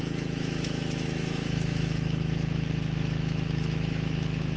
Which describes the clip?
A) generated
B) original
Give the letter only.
A